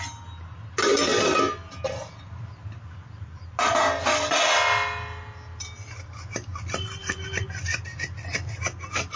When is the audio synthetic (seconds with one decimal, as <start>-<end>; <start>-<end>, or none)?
none